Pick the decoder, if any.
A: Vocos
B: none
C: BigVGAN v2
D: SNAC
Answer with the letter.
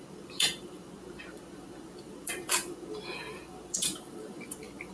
C